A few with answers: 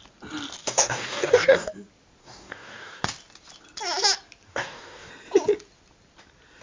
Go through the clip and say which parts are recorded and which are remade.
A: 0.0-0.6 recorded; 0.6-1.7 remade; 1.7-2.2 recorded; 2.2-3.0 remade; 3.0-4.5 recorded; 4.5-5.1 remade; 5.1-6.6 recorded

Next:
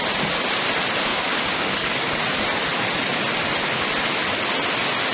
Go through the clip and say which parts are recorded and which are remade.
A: 0.0-1.1 recorded; 1.1-2.1 remade; 2.1-5.1 recorded

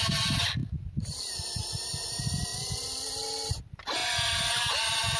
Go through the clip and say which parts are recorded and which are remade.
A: 0.0-0.6 recorded; 0.6-1.2 remade; 1.2-2.5 recorded; 2.5-3.6 remade; 3.6-5.2 recorded